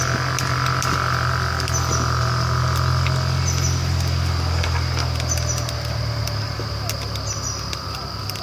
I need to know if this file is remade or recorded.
recorded